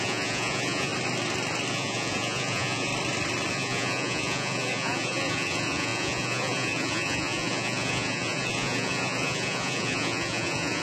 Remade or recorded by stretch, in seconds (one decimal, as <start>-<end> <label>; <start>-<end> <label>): 0.0-0.9 remade; 0.9-1.7 recorded; 1.7-2.9 remade; 2.9-3.5 recorded; 3.5-10.8 remade